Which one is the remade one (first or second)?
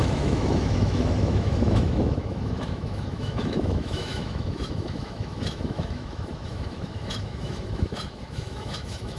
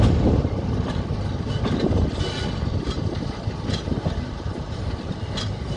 first